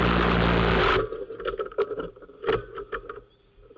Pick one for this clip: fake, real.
real